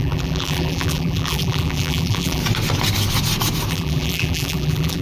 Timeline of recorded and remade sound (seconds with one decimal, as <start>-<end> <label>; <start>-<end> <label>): 0.0-2.4 remade; 2.4-3.7 recorded; 3.7-5.0 remade